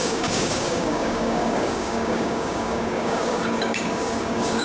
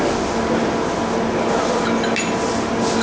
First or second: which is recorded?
second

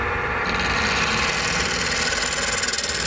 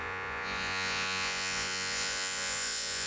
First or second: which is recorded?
first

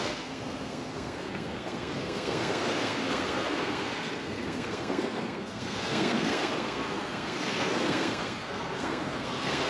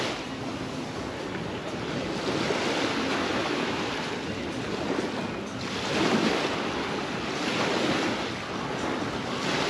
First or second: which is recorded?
second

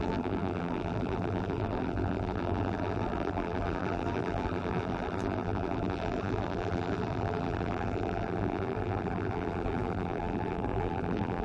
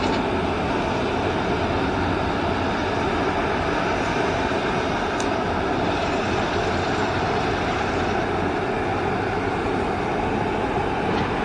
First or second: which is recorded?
second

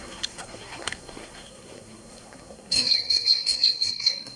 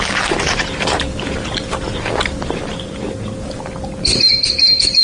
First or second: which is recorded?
second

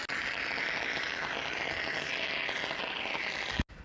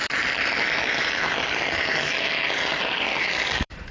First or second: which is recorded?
first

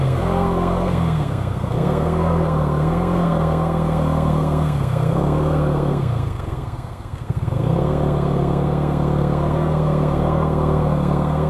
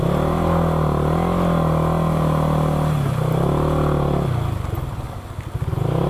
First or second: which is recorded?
second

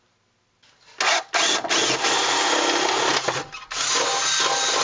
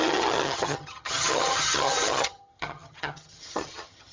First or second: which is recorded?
first